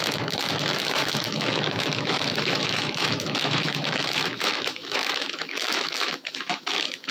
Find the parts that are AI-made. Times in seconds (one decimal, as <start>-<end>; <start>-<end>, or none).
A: 0.0-7.1